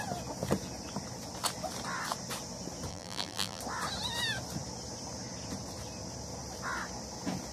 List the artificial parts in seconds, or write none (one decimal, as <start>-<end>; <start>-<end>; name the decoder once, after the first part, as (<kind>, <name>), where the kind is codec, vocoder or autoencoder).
2.9-3.6 (vocoder, BigVGAN v2)